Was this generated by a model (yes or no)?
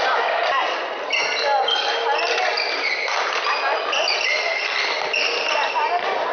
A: no